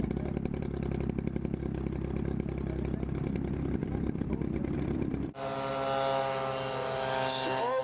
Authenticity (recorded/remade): recorded